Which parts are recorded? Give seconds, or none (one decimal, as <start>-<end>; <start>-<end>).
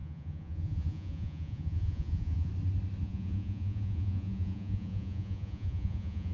2.5-3.0